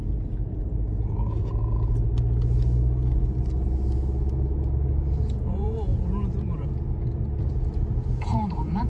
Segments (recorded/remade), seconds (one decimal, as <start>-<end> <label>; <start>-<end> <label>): 0.0-0.6 remade; 0.6-5.1 recorded; 5.1-5.9 remade; 5.9-8.1 recorded; 8.1-8.9 remade